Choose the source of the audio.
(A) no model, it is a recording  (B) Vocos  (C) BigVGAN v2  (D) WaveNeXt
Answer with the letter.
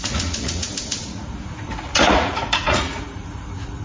B